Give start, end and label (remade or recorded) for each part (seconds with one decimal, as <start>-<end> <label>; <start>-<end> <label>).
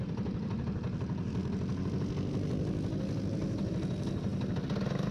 0.0-5.1 recorded